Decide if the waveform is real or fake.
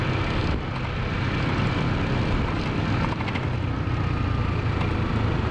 real